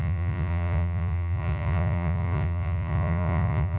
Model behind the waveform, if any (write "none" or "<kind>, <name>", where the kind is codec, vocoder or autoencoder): vocoder, Vocos